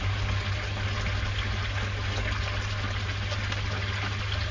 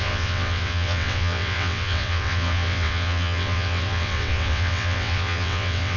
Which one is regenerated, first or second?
second